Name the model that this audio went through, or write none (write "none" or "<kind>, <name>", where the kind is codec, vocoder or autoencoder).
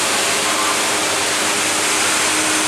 none